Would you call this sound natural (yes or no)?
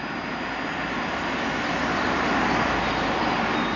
yes